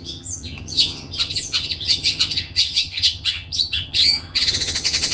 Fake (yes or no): yes